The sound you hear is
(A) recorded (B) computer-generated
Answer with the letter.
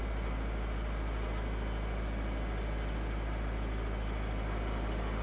A